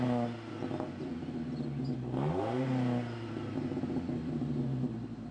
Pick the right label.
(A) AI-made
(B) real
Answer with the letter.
B